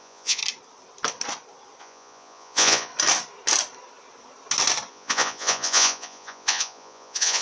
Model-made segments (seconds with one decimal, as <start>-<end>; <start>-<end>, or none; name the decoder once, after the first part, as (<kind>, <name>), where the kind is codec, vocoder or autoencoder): 0.0-0.4 (vocoder, Vocos); 1.8-2.9; 4.9-7.4